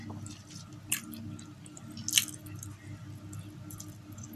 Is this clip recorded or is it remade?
recorded